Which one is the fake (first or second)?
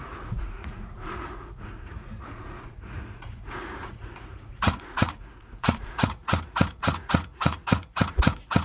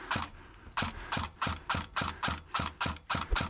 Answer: first